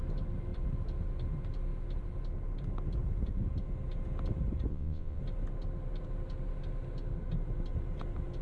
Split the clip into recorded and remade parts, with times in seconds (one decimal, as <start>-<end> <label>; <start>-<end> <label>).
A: 0.0-4.7 recorded; 4.7-5.2 remade; 5.2-8.4 recorded